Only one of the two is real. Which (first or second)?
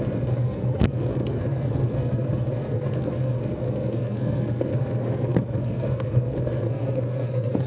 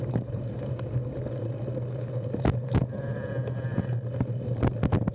second